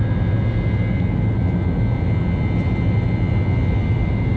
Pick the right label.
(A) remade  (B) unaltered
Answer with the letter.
B